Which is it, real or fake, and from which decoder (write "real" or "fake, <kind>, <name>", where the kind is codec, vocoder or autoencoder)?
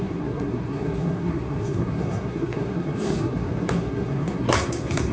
fake, codec, SNAC